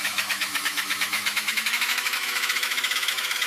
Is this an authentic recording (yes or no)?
no